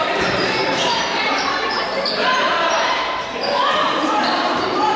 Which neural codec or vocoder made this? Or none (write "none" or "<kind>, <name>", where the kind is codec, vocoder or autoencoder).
vocoder, BigVGAN v2